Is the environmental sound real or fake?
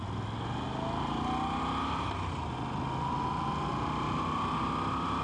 real